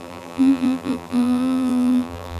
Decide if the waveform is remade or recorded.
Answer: remade